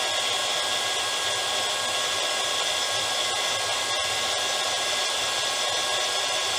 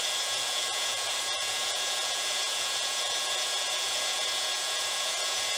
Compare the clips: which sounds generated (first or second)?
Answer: second